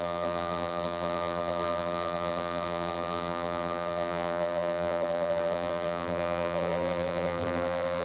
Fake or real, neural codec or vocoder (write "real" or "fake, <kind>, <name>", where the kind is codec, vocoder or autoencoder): fake, vocoder, BigVGAN v2